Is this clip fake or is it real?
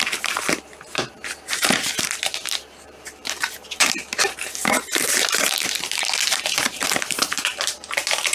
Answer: fake